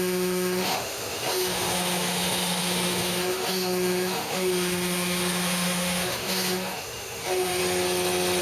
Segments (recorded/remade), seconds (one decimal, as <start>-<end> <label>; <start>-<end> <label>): 0.0-7.6 remade; 7.6-8.4 recorded